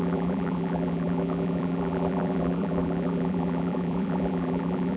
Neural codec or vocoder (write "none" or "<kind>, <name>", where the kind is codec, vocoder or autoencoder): vocoder, BigVGAN v2